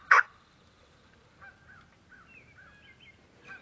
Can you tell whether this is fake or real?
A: real